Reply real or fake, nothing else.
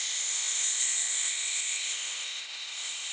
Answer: fake